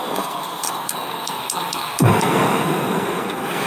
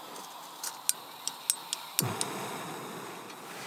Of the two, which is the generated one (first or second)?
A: first